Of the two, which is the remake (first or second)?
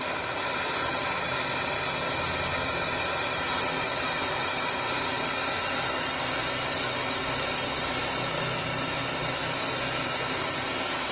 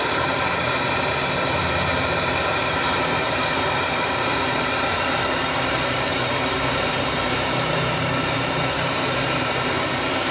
second